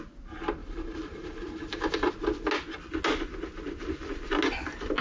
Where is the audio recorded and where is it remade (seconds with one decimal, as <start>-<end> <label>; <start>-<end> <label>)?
0.0-0.6 recorded; 0.6-2.1 remade; 2.1-5.0 recorded

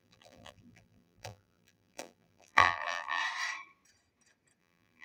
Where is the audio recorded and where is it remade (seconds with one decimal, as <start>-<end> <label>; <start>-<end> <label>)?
0.0-3.2 remade; 3.2-4.6 recorded; 4.6-5.0 remade

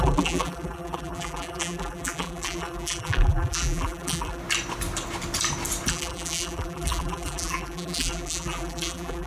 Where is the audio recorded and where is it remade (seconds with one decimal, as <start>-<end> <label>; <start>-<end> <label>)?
0.0-4.4 remade; 4.4-5.9 recorded; 5.9-9.3 remade